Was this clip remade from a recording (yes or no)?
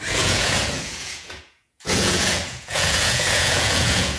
yes